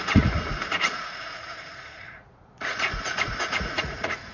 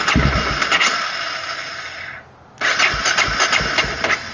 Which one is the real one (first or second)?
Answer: second